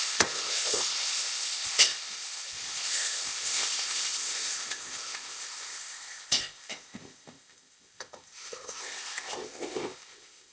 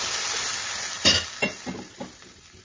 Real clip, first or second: second